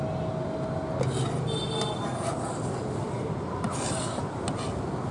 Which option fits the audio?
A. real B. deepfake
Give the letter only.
A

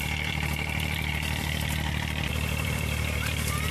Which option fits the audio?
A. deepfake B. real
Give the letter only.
A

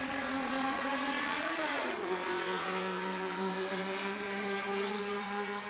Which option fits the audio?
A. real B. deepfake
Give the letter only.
B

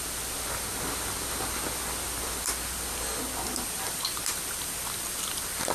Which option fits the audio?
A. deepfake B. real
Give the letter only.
B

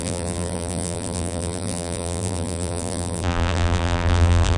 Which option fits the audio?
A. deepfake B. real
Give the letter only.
A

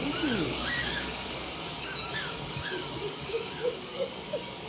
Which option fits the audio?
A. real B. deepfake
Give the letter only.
B